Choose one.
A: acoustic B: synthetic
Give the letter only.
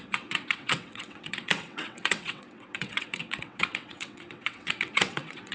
B